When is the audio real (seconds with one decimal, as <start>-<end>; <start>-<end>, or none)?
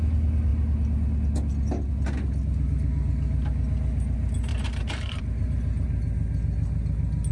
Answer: 0.0-4.5; 5.2-7.3